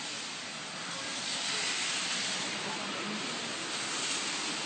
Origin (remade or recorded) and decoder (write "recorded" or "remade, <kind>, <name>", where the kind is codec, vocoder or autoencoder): recorded